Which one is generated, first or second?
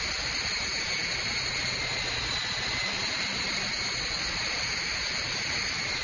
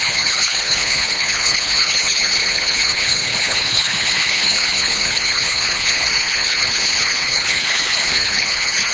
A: second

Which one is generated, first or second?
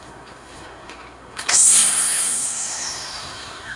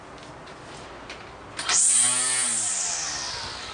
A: first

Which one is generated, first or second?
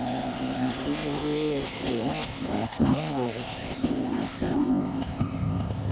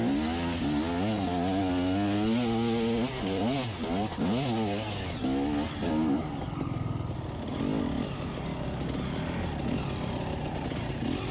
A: first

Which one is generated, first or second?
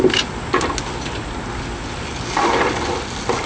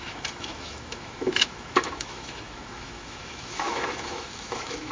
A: second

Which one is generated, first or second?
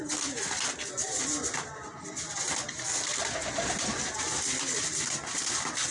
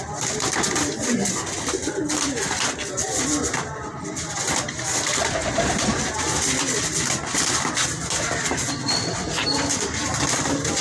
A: second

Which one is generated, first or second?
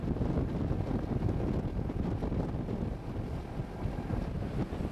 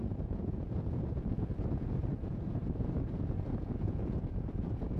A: second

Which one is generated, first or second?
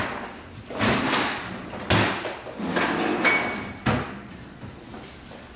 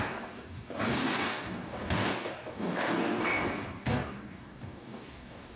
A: second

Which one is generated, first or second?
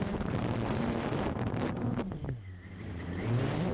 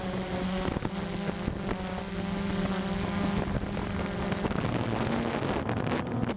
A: first